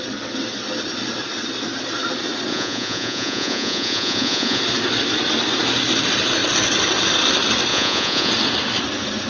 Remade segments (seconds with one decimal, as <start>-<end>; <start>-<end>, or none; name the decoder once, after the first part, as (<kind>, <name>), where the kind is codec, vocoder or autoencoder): 2.5-4.6 (vocoder, Vocos); 7.7-8.3